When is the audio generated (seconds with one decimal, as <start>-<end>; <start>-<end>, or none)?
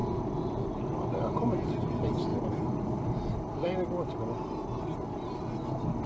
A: 0.0-1.0; 2.3-4.2